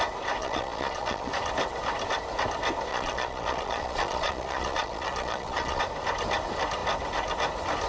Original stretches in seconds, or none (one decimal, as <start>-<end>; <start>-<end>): 0.0-0.4; 1.3-2.9; 5.8-7.9